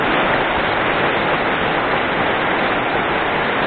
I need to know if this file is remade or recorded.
recorded